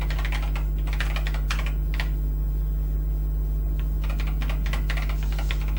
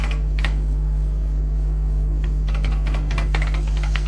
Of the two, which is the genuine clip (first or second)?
first